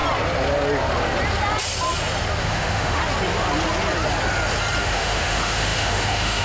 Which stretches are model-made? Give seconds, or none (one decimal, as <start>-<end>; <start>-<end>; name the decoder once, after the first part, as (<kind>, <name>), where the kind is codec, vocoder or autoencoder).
2.4-3.0 (autoencoder, DAC-VAE); 4.8-6.4